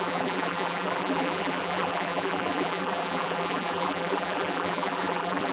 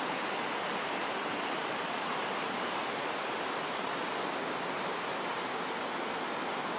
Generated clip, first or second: first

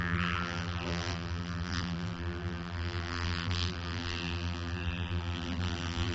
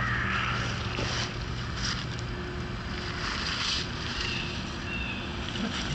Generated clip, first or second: first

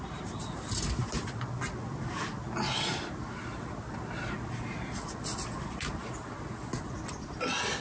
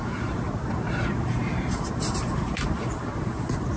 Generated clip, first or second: second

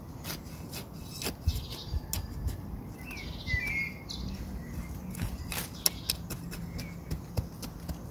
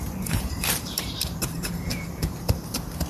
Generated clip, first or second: second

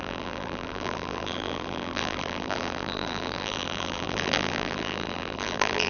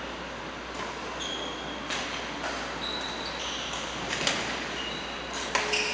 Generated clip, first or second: first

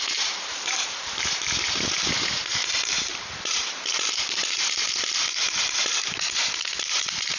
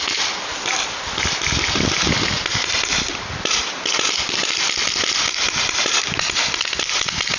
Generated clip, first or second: first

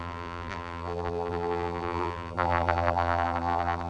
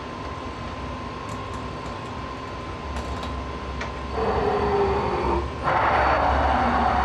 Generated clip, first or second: first